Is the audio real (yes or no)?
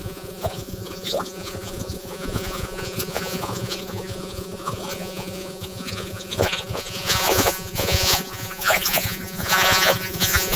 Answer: no